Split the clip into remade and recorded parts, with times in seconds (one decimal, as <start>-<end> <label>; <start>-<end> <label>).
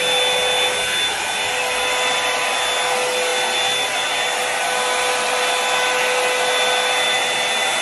0.0-7.8 recorded